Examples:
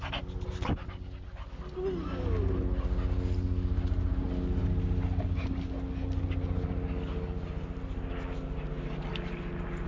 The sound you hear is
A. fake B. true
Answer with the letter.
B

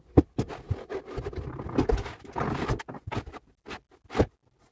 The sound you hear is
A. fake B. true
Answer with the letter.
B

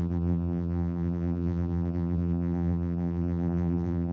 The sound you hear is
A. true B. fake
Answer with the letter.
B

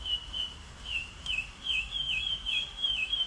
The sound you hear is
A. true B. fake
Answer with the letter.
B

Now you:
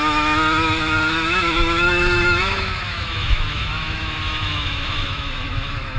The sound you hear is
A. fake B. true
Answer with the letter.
A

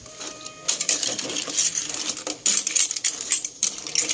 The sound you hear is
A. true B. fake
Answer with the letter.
A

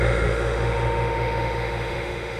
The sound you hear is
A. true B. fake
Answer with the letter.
B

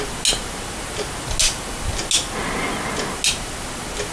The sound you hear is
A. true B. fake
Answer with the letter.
A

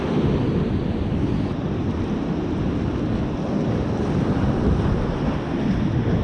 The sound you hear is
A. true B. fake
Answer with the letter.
A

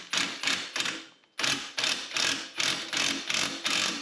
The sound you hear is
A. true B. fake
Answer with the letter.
A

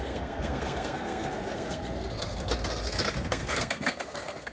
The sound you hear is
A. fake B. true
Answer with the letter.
A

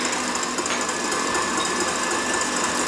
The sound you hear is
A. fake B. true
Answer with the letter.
B